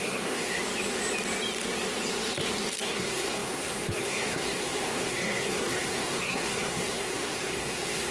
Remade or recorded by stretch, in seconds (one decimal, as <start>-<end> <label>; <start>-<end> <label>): 0.0-0.6 remade; 0.6-2.8 recorded; 2.8-8.1 remade